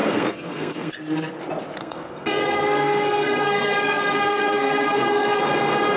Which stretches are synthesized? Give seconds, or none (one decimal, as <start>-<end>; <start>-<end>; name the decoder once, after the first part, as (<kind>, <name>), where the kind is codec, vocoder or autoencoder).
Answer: 0.0-0.9 (codec, SNAC); 1.8-5.4